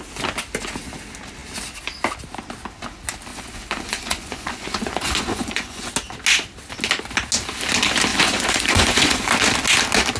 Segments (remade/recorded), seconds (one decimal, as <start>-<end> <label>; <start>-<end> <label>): 0.0-3.3 recorded; 3.3-5.9 remade; 5.9-8.1 recorded; 8.1-9.3 remade; 9.3-10.2 recorded